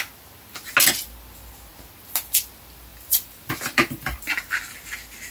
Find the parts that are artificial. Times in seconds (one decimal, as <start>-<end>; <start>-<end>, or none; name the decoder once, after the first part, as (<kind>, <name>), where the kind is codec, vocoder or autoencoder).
2.9-4.3 (vocoder, BigVGAN v2)